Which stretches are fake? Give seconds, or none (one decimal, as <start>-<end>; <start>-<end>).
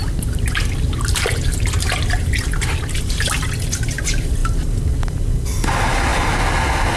1.3-3.0